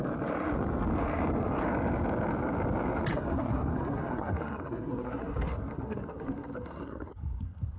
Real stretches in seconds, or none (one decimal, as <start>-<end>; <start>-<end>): 0.0-3.1